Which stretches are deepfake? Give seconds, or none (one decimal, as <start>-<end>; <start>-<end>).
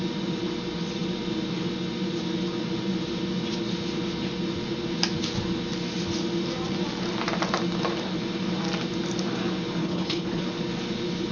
9.8-10.4